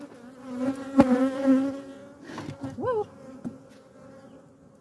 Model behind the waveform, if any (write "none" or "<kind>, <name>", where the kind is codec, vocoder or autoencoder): none